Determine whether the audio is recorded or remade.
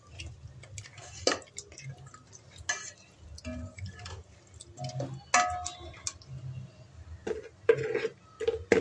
recorded